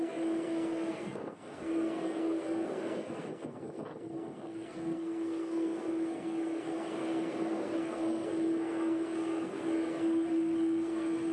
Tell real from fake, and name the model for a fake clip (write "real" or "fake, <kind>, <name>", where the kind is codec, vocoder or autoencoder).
fake, codec, SNAC